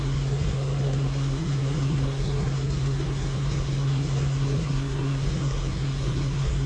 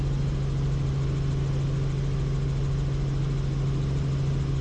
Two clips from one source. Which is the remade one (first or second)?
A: first